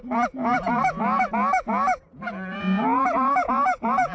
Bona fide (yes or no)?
no